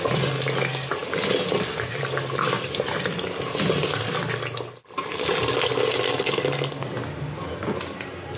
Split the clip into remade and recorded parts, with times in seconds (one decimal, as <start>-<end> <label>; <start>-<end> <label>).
0.0-8.4 recorded

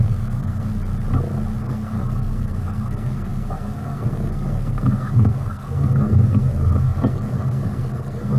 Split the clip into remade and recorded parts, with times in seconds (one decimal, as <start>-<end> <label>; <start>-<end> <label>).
0.0-0.7 remade; 0.7-1.6 recorded; 1.6-8.4 remade

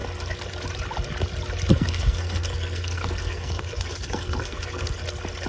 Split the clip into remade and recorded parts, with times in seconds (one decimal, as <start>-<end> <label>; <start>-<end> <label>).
0.0-1.7 recorded; 1.7-5.0 remade; 5.0-5.5 recorded